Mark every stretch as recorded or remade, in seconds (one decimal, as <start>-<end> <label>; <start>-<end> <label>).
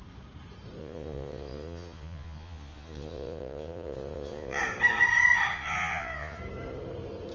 0.0-0.8 recorded; 0.8-4.6 remade; 4.6-5.5 recorded; 5.5-6.4 remade; 6.4-7.3 recorded